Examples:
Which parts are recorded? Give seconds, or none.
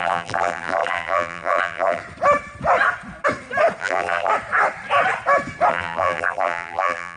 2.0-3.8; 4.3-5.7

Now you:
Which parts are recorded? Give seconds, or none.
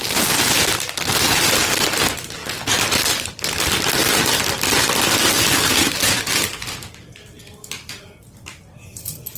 1.3-2.4; 3.9-9.4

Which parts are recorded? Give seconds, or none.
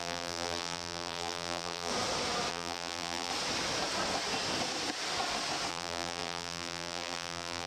1.9-2.5; 3.3-5.7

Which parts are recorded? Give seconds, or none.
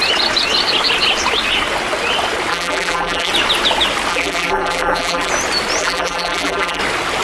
0.0-2.5; 3.3-4.1; 5.3-5.8; 6.8-7.2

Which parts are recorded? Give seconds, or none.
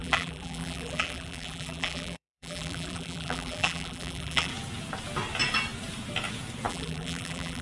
4.5-6.7